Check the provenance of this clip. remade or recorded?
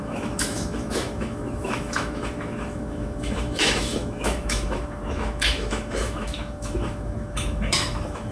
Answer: remade